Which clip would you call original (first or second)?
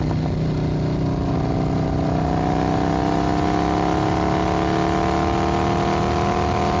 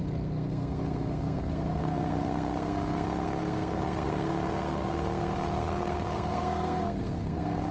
first